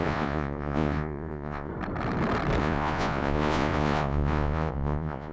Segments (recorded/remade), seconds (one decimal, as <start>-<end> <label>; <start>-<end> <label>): 0.0-1.7 remade; 1.7-2.6 recorded; 2.6-5.3 remade